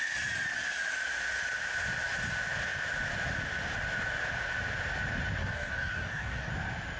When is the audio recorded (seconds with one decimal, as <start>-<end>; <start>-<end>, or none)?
0.0-5.4; 6.5-7.0